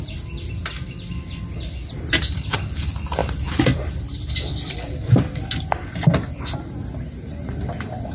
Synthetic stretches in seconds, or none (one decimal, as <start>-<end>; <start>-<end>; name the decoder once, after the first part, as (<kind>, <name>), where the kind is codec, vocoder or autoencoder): none